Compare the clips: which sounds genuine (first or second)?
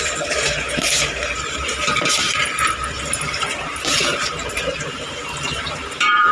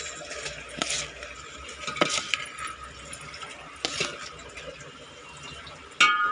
second